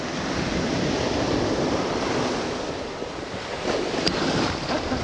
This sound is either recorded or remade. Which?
remade